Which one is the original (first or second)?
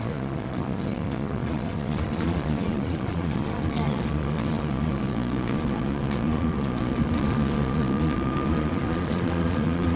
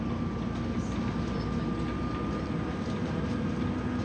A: second